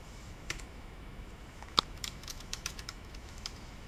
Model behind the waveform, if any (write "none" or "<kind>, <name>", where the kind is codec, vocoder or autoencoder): autoencoder, DAC-VAE